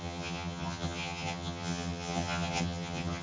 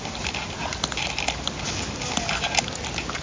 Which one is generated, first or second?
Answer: first